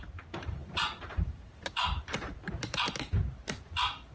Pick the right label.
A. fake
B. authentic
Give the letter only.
A